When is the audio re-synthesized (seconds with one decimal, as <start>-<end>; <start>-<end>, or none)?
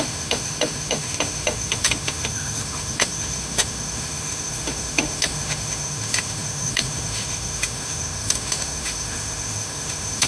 0.0-10.3